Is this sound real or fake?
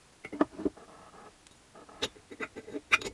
real